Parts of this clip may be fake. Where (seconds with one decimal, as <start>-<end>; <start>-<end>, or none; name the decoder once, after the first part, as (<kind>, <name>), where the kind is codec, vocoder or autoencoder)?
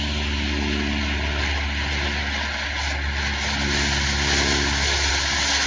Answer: none